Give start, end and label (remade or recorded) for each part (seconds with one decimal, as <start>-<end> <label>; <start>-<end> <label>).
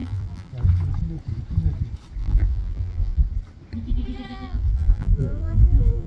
0.0-0.5 remade; 0.5-2.2 recorded; 2.2-3.2 remade; 3.2-4.3 recorded; 4.3-6.1 remade